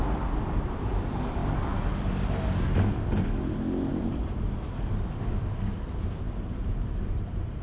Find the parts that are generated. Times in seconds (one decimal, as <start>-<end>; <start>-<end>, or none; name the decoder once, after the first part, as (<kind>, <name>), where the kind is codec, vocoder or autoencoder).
0.0-1.4 (vocoder, BigVGAN v2); 6.0-7.6